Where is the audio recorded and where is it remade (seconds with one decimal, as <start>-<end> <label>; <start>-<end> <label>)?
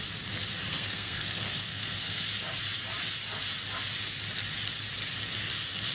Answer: 0.0-0.7 recorded; 0.7-2.2 remade; 2.2-5.9 recorded